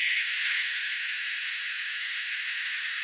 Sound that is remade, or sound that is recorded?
remade